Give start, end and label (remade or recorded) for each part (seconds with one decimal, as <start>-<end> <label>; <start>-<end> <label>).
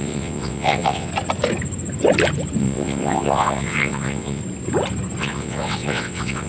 0.0-1.1 remade; 1.1-2.6 recorded; 2.6-4.4 remade; 4.4-5.2 recorded; 5.2-6.5 remade